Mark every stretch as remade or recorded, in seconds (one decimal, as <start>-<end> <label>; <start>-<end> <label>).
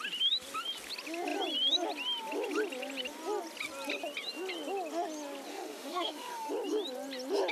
0.0-5.5 recorded; 5.5-6.5 remade; 6.5-7.5 recorded